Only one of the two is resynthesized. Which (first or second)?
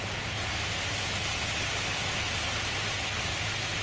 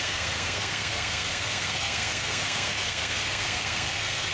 second